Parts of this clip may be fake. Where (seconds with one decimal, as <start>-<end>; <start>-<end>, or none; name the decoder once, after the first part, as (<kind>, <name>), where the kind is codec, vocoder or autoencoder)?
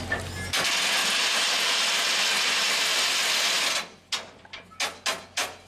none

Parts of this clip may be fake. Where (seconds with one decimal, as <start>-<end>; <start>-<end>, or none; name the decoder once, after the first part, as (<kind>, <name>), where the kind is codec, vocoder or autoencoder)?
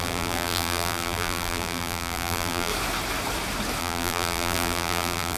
0.0-2.7 (vocoder, BigVGAN v2); 3.8-5.4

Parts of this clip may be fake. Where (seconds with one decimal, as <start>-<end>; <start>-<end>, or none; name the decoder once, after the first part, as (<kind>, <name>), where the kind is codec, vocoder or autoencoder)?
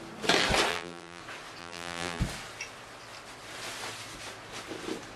0.7-1.2 (vocoder, BigVGAN v2); 1.6-2.2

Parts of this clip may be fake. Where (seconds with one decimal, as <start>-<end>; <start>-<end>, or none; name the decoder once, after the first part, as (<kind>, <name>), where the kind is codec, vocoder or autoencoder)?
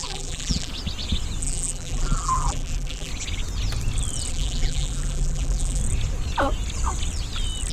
0.0-0.7 (vocoder, BigVGAN v2); 1.4-3.1; 4.3-5.8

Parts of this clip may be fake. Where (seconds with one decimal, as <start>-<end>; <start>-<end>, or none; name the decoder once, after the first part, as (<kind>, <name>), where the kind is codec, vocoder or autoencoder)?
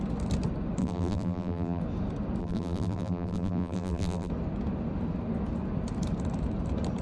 0.8-1.8 (vocoder, BigVGAN v2); 2.4-4.3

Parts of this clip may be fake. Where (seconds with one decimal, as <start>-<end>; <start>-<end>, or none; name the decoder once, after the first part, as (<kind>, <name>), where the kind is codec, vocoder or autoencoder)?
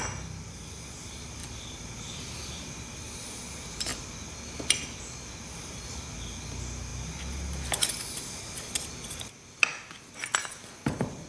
1.4-3.4 (vocoder, BigVGAN v2)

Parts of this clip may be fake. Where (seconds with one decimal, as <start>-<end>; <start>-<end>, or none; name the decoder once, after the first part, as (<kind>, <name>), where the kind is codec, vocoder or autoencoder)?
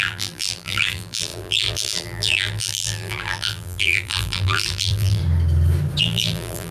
0.0-5.2 (vocoder, BigVGAN v2); 6.0-6.7